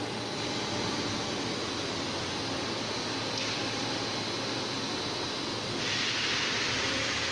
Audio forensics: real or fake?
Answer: real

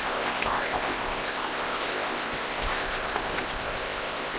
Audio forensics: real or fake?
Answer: fake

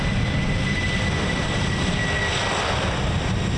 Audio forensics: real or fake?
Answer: real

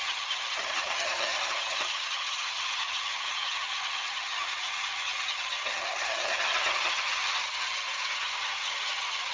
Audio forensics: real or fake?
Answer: fake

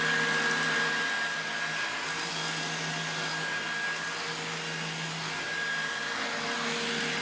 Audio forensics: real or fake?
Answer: real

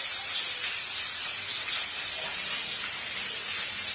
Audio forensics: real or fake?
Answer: real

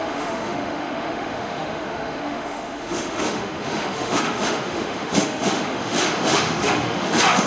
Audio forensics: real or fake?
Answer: fake